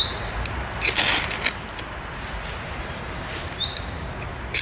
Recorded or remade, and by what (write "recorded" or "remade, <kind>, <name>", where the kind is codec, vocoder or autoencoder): recorded